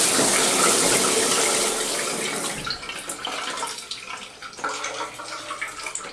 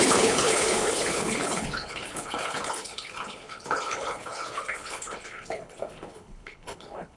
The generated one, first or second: second